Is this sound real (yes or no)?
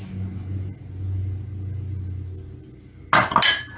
yes